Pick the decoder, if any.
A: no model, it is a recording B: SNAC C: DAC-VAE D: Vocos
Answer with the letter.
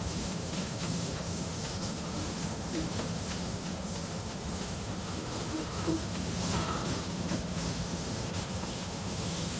C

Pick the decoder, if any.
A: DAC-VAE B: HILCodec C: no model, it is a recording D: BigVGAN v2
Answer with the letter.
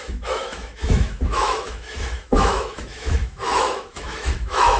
A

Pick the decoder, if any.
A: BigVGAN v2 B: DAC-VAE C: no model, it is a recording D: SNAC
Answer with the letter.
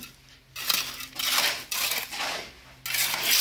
C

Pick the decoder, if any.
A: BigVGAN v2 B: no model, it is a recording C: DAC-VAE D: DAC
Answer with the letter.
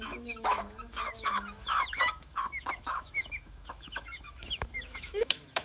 C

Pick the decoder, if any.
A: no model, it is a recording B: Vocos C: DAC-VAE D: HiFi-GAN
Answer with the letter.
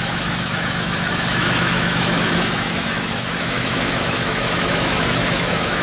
C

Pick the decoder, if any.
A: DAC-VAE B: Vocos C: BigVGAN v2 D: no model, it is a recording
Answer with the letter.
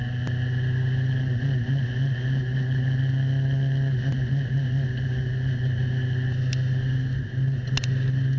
D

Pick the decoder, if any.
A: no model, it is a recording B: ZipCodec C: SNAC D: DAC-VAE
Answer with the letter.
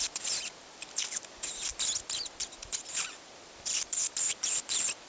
A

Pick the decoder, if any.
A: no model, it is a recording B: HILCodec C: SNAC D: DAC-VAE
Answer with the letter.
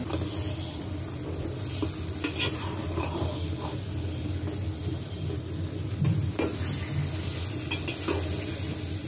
A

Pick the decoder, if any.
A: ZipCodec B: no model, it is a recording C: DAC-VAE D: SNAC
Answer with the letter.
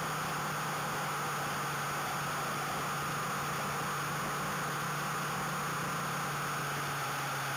B